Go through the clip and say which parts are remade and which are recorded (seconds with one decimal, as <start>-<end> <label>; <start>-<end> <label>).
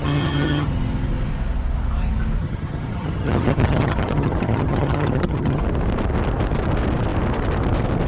0.0-0.7 remade; 0.7-2.4 recorded; 2.4-5.6 remade; 5.6-8.1 recorded